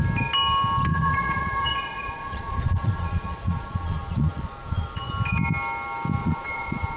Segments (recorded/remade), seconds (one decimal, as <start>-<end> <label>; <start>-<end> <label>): 0.0-0.9 recorded; 0.9-5.1 remade; 5.1-6.2 recorded; 6.2-7.0 remade